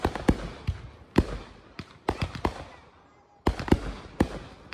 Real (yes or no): yes